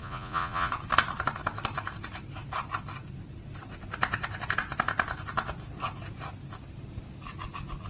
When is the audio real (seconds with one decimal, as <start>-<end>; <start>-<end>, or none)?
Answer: 0.7-7.9